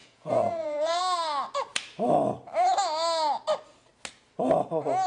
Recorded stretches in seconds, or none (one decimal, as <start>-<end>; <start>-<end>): 1.0-5.1